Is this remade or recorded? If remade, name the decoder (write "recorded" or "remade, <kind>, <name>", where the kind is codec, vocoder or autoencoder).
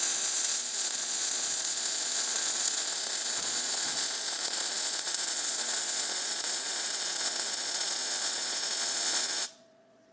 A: remade, vocoder, Vocos